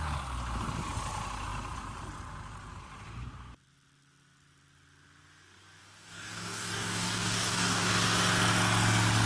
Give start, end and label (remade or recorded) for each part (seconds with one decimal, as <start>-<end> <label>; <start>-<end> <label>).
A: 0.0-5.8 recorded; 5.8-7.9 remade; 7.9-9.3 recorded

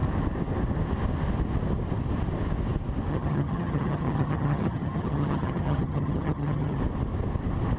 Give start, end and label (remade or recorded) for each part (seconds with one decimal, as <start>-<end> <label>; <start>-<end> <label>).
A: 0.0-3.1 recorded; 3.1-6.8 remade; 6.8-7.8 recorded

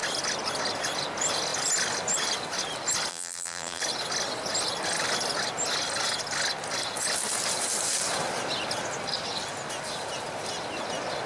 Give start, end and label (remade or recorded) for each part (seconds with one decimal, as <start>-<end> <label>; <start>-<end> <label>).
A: 0.0-3.1 recorded; 3.1-3.8 remade; 3.8-11.3 recorded

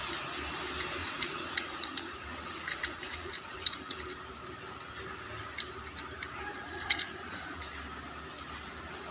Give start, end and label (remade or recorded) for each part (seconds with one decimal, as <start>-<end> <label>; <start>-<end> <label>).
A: 0.0-1.0 recorded; 1.0-4.0 remade; 4.0-6.5 recorded; 6.5-7.6 remade; 7.6-9.1 recorded